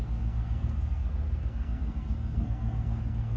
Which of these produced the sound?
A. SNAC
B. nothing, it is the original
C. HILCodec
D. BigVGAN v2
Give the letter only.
A